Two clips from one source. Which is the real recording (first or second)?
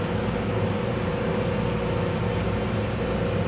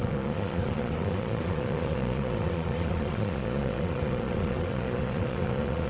first